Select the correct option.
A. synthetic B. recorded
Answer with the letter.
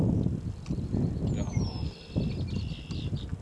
B